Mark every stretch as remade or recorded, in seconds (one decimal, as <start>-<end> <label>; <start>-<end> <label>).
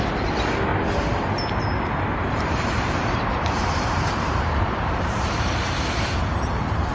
0.0-0.7 remade; 0.7-2.3 recorded; 2.3-6.9 remade